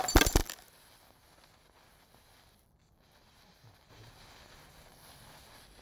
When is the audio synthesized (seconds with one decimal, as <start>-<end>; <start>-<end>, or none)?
none